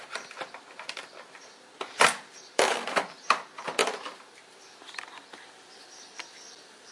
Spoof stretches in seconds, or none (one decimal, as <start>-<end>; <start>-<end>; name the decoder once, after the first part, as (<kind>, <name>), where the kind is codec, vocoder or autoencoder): 0.0-6.9 (vocoder, BigVGAN v2)